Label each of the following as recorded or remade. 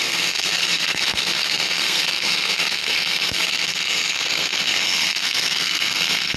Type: remade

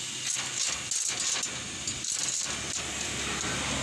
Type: recorded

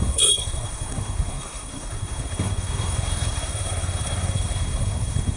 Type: remade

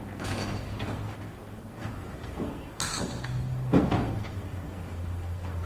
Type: remade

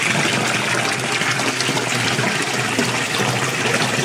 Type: recorded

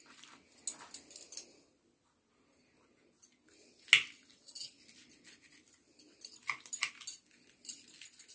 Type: recorded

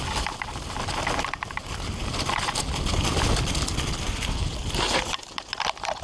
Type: recorded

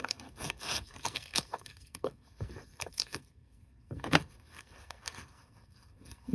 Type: remade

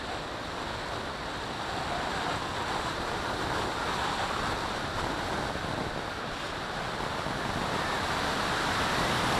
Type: recorded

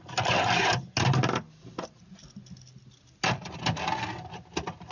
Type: recorded